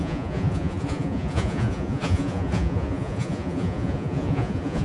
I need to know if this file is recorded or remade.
remade